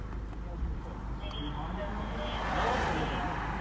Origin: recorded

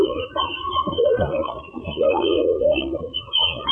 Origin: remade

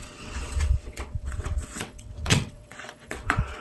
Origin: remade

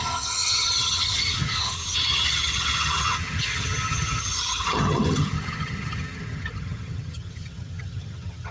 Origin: remade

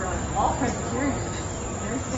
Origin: recorded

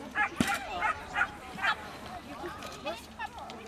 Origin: remade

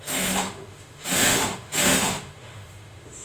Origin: remade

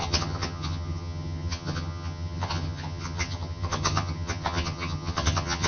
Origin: remade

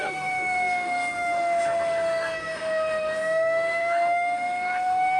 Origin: remade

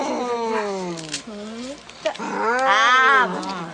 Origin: recorded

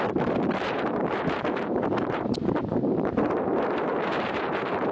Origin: remade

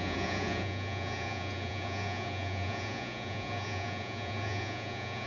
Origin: remade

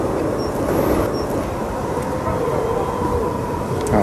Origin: recorded